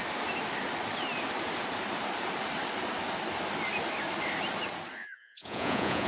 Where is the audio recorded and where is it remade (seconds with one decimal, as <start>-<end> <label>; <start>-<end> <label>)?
0.0-5.0 recorded; 5.0-6.1 remade